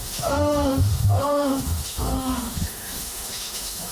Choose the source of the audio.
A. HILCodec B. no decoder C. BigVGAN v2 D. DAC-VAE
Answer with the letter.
D